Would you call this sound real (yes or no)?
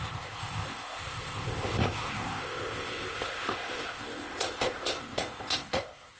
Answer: no